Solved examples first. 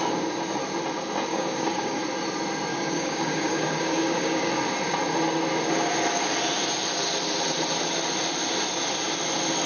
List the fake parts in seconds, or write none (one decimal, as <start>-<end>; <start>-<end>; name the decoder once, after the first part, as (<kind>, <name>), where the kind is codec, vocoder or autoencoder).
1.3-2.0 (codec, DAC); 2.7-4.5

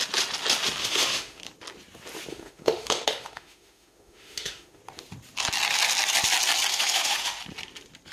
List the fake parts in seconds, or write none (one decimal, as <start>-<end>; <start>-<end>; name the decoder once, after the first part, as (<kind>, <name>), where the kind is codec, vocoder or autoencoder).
0.8-1.4 (autoencoder, DAC-VAE); 2.3-4.8; 6.7-7.4

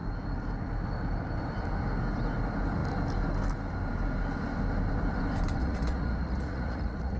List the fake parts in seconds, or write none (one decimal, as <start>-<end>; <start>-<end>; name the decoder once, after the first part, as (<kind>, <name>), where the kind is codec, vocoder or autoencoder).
5.6-7.2 (vocoder, Vocos)

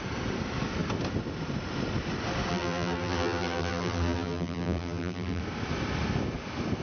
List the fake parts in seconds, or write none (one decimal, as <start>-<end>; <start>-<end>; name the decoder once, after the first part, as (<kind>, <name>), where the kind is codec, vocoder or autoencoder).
2.5-5.4 (vocoder, BigVGAN v2)

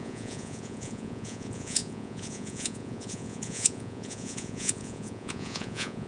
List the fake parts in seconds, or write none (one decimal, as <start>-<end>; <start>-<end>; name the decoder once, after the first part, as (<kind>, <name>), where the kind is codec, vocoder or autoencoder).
0.0-6.1 (vocoder, Vocos)